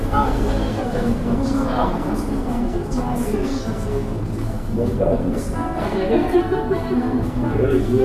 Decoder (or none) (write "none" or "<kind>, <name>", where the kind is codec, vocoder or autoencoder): codec, SNAC